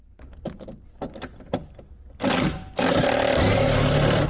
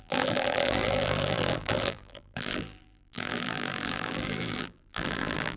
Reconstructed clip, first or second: second